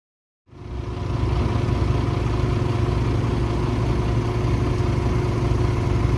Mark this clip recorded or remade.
recorded